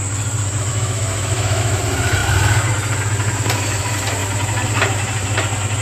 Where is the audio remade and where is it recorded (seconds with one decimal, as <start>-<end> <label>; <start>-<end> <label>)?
0.0-0.7 recorded; 0.7-1.8 remade; 1.8-5.8 recorded